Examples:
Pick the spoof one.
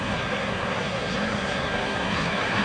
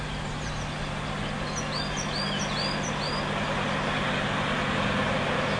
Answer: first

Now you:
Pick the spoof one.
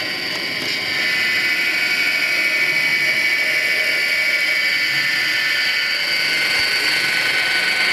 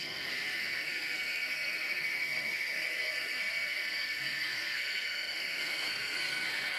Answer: second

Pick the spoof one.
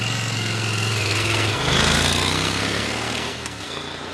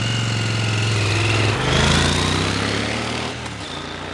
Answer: first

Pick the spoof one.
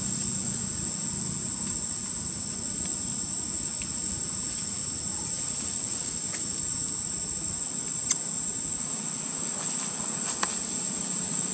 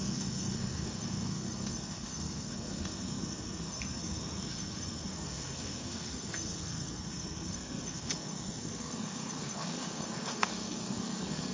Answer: second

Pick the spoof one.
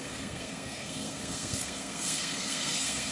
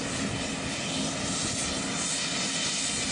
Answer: first